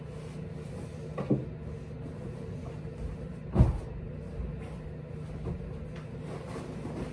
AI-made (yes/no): no